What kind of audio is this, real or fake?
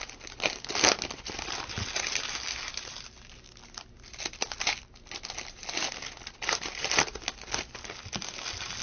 real